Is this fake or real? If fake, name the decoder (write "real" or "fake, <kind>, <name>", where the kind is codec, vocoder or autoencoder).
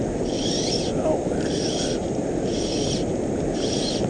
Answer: real